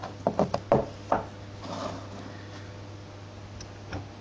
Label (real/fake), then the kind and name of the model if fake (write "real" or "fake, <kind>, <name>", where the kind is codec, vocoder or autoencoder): real